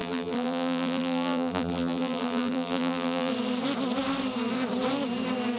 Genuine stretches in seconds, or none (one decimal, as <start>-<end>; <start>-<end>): 3.3-5.6